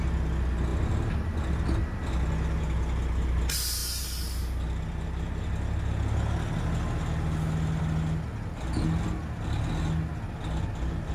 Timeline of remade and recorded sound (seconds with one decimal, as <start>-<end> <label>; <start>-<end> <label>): 0.0-11.1 recorded